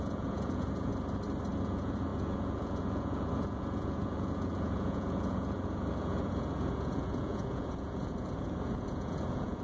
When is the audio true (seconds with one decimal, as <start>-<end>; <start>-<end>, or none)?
0.9-1.6